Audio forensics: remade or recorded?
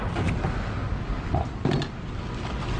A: recorded